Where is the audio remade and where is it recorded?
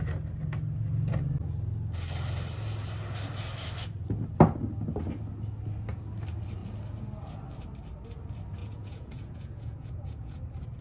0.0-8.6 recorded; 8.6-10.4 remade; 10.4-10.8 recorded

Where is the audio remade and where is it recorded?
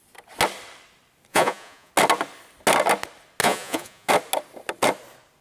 0.0-1.3 recorded; 1.3-1.9 remade; 1.9-3.4 recorded; 3.4-4.1 remade; 4.1-5.4 recorded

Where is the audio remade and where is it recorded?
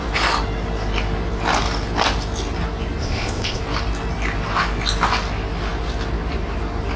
0.0-3.0 recorded; 3.0-3.6 remade; 3.6-7.0 recorded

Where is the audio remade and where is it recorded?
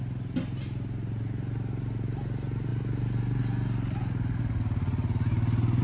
0.0-5.8 recorded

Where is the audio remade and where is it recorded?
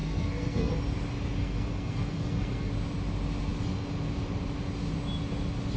0.0-0.7 remade; 0.7-1.4 recorded; 1.4-2.7 remade; 2.7-5.8 recorded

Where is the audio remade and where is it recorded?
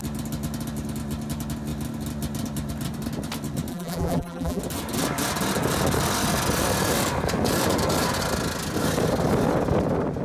0.0-3.7 recorded; 3.7-4.6 remade; 4.6-10.2 recorded